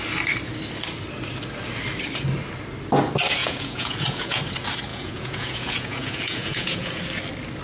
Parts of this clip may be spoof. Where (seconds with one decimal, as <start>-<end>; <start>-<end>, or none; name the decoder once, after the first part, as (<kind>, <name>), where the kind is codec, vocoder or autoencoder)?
3.4-4.4 (vocoder, Vocos); 4.9-7.0